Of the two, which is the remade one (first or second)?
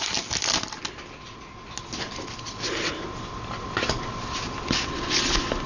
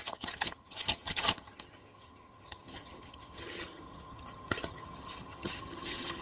second